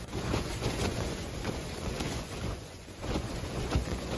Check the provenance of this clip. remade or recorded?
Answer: remade